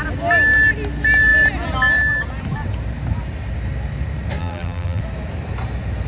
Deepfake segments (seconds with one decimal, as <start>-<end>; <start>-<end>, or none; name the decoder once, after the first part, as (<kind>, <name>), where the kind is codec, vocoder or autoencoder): 4.4-5.0 (vocoder, BigVGAN v2)